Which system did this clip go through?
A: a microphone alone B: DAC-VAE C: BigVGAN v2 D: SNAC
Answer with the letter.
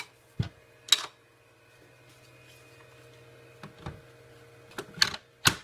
A